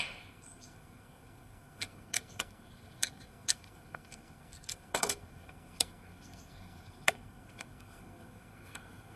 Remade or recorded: remade